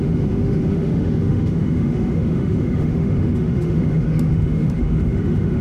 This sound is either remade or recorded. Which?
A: remade